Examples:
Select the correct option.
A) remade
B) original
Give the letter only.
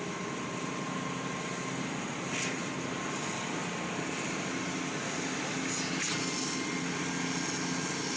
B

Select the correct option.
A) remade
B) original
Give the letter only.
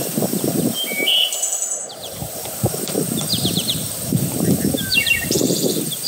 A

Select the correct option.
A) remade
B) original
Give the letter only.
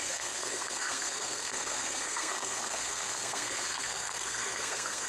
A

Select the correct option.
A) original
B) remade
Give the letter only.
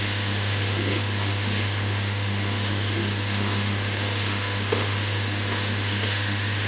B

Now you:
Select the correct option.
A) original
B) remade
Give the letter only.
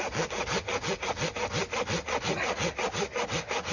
A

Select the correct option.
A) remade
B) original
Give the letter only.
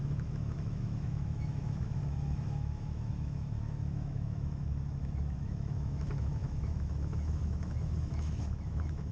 A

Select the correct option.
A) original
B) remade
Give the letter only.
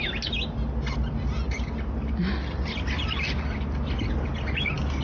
A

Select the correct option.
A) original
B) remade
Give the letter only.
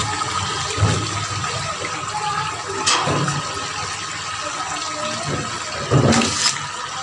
A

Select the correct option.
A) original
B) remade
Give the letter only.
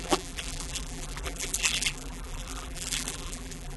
B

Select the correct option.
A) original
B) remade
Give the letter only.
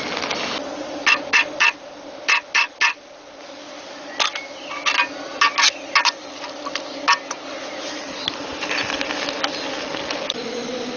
A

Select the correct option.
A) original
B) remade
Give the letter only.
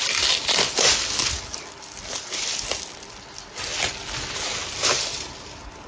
A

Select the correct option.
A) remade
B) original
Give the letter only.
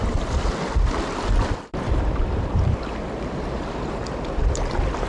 B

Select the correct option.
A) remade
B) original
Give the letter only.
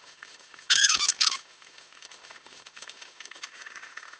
A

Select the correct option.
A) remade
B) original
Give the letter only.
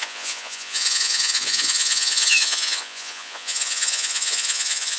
A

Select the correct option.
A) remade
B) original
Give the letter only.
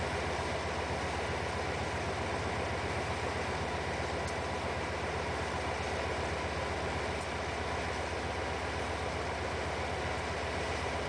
B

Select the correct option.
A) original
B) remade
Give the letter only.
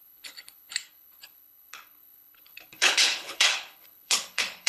B